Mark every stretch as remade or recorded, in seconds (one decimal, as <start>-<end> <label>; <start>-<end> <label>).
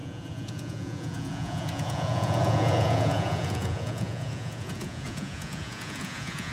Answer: 0.0-6.5 remade